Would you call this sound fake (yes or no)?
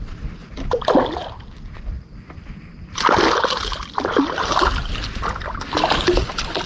no